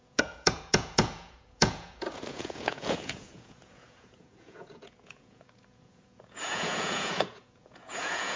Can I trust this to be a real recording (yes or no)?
no